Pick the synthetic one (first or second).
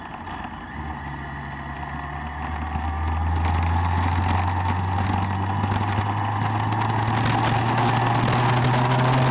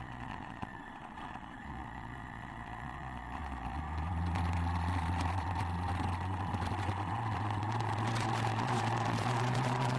second